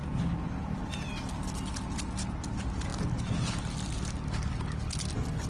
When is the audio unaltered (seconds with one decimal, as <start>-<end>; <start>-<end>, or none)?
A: 0.0-5.5